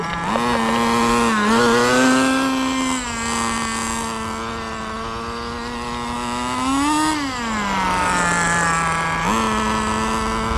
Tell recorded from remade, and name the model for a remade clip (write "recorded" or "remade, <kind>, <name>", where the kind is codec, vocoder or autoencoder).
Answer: recorded